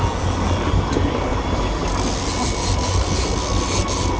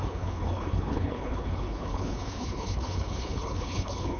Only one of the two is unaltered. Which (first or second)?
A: first